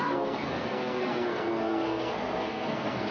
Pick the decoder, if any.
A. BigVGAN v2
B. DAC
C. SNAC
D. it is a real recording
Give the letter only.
C